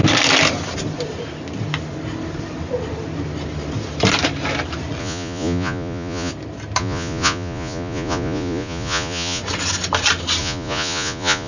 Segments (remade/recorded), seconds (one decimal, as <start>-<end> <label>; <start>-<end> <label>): 0.0-5.0 recorded; 5.0-6.3 remade; 6.3-6.8 recorded; 6.8-9.4 remade; 9.4-10.4 recorded; 10.4-11.5 remade